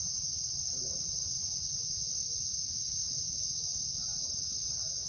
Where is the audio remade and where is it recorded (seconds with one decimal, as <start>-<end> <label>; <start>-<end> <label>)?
0.0-5.1 recorded